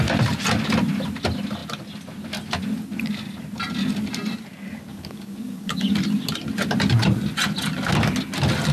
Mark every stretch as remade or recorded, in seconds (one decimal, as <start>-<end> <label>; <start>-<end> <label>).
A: 0.0-4.9 recorded; 4.9-5.9 remade; 5.9-8.7 recorded